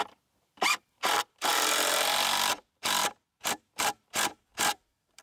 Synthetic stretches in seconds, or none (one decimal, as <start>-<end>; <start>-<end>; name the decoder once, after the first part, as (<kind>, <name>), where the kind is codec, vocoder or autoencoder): 0.0-1.5 (vocoder, BigVGAN v2); 2.5-3.0; 3.5-5.2